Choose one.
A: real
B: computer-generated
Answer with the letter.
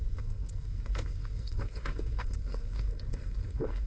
B